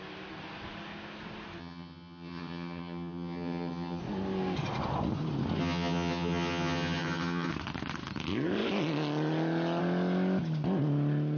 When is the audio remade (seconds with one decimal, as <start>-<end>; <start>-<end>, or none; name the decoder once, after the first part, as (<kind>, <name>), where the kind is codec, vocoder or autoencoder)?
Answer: 1.6-4.0 (vocoder, HiFi-GAN); 5.6-7.5